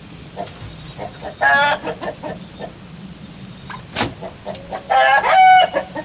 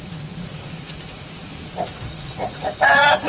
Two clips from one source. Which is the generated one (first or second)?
second